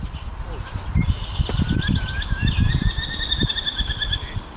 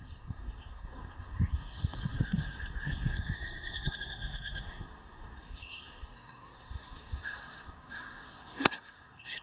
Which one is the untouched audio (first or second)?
first